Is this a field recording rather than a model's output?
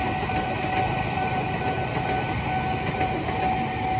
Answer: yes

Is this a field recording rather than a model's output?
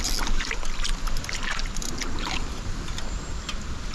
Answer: yes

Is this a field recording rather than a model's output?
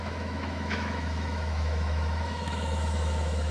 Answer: no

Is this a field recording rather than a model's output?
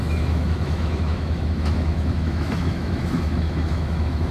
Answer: no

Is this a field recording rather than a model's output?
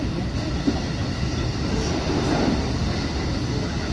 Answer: yes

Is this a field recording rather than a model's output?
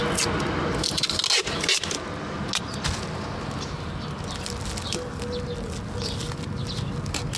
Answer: yes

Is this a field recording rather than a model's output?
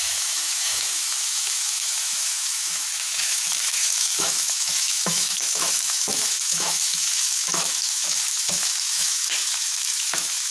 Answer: no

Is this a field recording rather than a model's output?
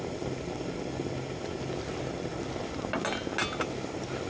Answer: yes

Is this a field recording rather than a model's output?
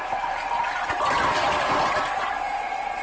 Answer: yes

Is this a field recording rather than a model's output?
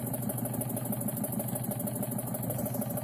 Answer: yes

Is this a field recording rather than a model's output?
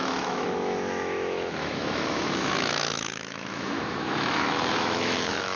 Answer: no